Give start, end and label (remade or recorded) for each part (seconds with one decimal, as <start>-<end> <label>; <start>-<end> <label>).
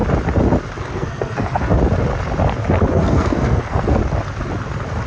0.0-0.8 recorded; 0.8-1.7 remade; 1.7-2.9 recorded; 2.9-4.0 remade; 4.0-5.1 recorded